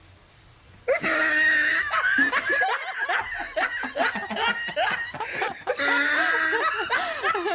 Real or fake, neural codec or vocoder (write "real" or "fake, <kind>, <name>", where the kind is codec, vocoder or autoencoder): real